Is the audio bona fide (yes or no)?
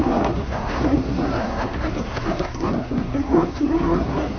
no